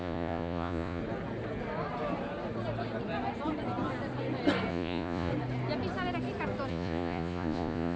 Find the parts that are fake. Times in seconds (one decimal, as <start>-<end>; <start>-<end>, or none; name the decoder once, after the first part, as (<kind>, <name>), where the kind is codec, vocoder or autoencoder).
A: 0.0-1.0 (vocoder, Vocos); 4.7-5.3; 6.7-8.0